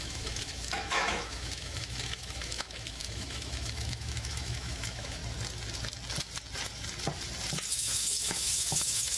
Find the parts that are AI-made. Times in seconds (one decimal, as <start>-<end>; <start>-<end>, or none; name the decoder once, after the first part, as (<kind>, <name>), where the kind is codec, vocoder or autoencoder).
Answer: 0.0-5.2 (autoencoder, DAC-VAE); 7.7-9.2